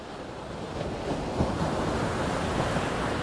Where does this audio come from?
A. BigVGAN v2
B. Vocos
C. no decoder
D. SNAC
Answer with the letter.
C